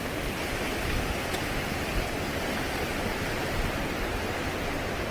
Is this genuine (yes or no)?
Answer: yes